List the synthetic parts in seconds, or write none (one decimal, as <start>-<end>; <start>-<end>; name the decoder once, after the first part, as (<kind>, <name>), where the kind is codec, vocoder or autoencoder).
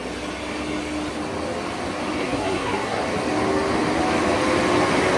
2.2-3.0 (codec, SNAC)